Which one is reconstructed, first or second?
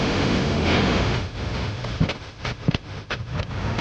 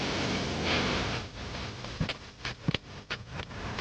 first